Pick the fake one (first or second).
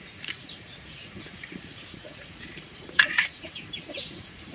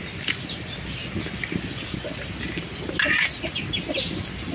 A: first